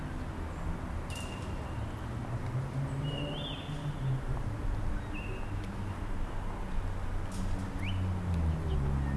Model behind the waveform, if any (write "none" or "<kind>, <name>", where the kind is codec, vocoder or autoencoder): none